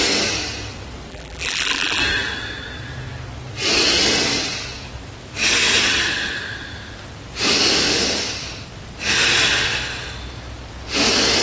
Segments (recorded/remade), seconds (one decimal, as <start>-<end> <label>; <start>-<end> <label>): 0.0-1.1 recorded; 1.1-2.0 remade; 2.0-11.4 recorded